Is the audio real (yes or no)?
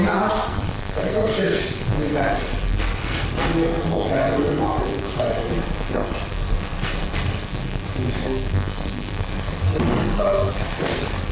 no